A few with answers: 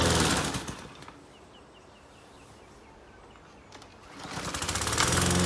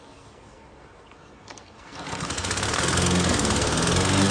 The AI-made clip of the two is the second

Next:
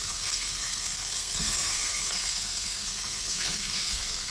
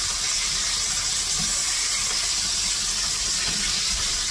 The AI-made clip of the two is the first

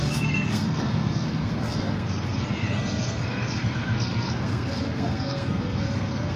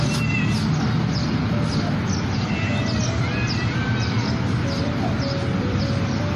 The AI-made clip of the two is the first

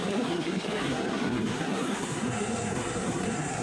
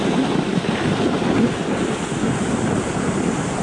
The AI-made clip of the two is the first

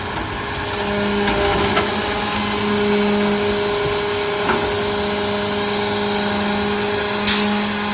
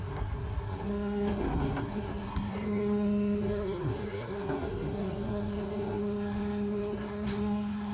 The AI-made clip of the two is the second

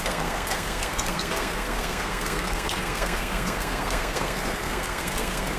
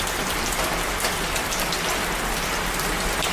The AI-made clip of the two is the first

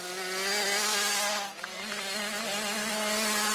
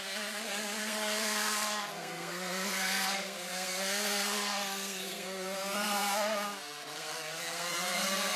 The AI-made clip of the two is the second